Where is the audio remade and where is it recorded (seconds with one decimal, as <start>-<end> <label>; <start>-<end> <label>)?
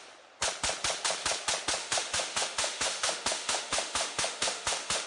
0.0-1.8 recorded; 1.8-5.1 remade